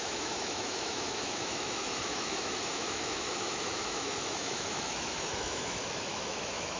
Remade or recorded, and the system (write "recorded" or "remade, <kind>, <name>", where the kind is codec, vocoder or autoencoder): remade, autoencoder, DAC-VAE